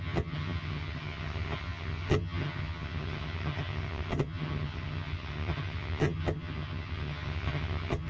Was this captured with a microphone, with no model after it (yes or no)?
no